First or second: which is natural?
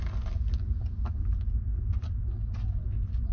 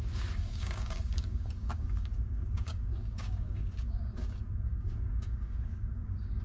first